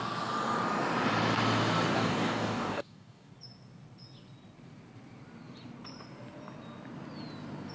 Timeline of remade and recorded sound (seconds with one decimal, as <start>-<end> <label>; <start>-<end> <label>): 0.0-1.9 recorded; 1.9-3.3 remade; 3.3-7.7 recorded